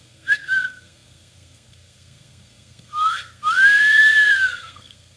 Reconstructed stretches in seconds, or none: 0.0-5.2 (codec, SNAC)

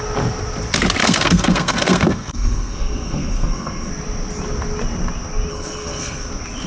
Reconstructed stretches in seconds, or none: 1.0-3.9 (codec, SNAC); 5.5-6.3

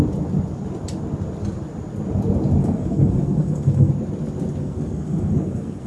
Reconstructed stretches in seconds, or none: 2.6-3.9 (codec, SNAC); 4.6-5.9

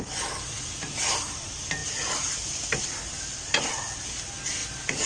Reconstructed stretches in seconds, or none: none

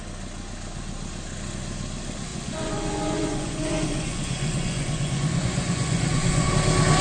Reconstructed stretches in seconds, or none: 2.3-6.5 (vocoder, Vocos)

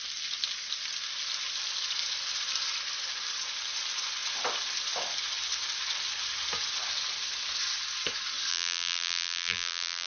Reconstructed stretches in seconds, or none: 8.5-10.1 (vocoder, BigVGAN v2)